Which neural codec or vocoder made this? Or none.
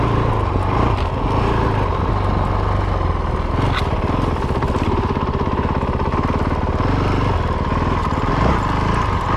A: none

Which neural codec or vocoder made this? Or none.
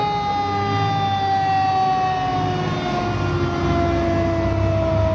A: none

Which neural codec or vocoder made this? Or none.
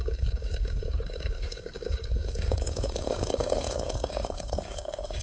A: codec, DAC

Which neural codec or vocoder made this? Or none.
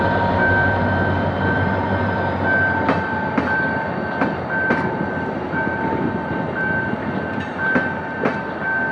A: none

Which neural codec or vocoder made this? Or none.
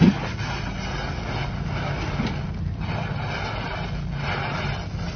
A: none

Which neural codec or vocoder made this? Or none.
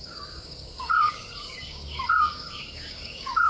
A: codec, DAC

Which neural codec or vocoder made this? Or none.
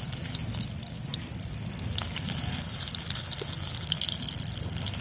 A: none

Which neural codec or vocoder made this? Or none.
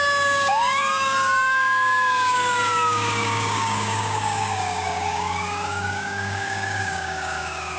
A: codec, DAC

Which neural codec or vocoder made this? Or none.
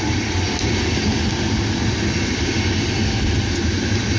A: none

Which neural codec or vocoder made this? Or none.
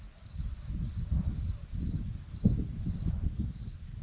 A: none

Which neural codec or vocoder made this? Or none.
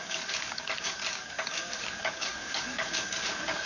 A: codec, DAC